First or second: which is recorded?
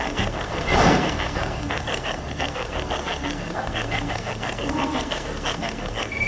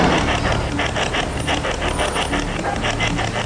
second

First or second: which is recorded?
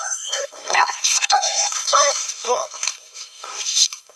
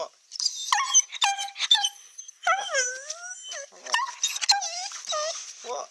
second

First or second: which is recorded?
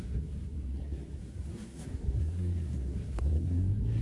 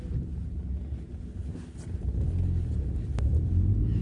second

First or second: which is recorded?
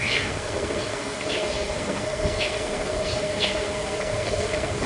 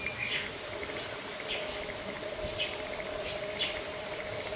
second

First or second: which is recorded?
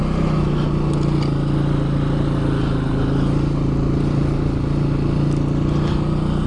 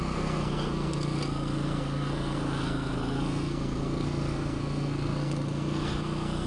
first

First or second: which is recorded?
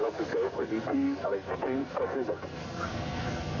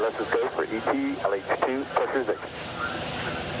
second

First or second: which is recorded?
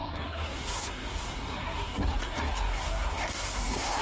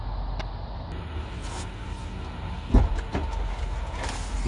second